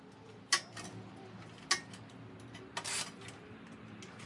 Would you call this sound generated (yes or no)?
no